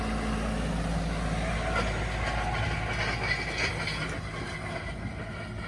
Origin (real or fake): real